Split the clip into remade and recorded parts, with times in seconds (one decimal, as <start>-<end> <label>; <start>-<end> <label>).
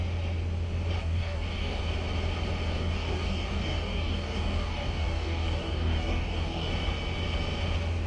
0.0-1.0 recorded; 1.0-1.8 remade; 1.8-2.7 recorded; 2.7-6.7 remade; 6.7-8.1 recorded